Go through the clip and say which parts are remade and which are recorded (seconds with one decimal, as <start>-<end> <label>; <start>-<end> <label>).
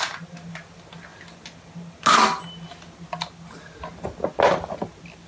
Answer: 0.0-5.3 recorded